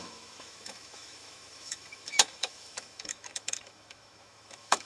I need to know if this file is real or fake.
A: fake